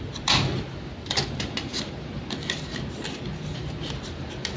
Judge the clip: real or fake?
real